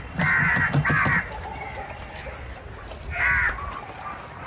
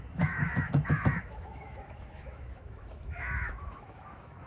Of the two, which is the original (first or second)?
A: first